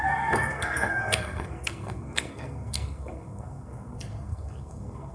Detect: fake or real fake